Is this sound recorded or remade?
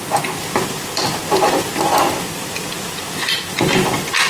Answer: recorded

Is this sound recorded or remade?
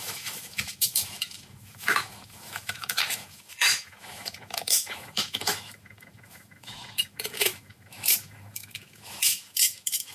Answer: remade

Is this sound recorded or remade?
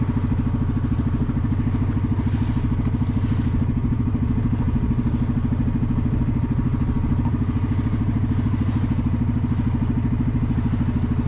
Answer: recorded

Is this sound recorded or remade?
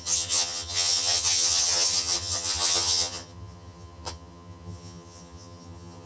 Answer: remade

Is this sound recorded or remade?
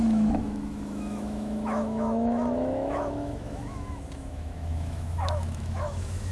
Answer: remade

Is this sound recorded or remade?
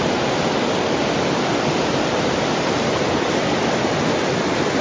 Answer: recorded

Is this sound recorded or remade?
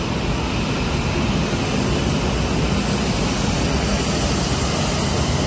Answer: recorded